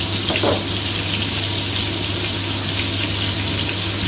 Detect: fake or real real